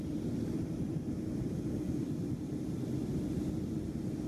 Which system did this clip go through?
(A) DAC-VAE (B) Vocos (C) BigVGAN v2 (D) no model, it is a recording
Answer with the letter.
D